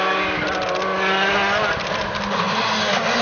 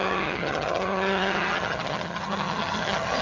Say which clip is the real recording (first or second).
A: first